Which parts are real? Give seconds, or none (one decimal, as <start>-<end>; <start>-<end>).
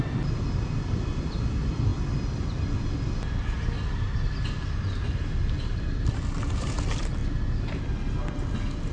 1.9-5.6; 7.2-8.9